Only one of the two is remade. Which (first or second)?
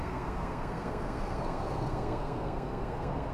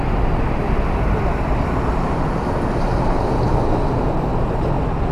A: first